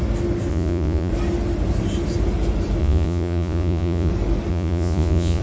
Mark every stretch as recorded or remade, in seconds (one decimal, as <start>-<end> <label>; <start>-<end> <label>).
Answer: 0.0-0.5 recorded; 0.5-1.1 remade; 1.1-2.8 recorded; 2.8-4.1 remade; 4.1-4.5 recorded; 4.5-5.4 remade